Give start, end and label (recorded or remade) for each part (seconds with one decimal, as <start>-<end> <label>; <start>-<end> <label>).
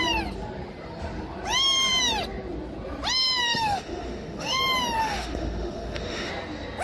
0.0-3.4 recorded; 3.4-4.6 remade; 4.6-5.0 recorded; 5.0-6.3 remade; 6.3-6.8 recorded